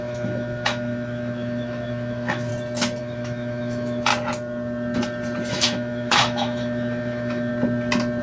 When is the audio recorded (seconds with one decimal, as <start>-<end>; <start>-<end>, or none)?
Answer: 2.5-3.0; 4.1-5.5; 7.5-8.2